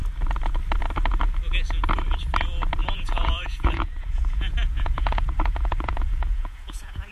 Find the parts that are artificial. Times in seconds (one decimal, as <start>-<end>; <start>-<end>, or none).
2.8-7.1